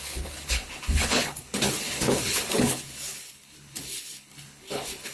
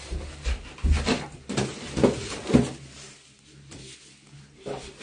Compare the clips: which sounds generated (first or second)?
first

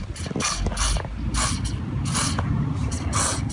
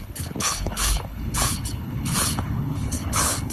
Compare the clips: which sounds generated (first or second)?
second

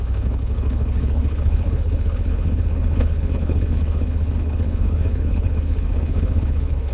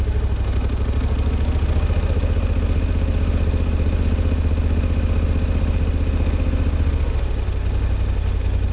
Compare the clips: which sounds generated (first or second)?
first